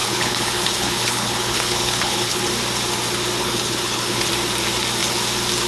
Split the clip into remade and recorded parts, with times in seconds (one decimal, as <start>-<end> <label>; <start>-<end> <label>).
0.0-2.4 remade; 2.4-3.4 recorded; 3.4-4.3 remade; 4.3-5.7 recorded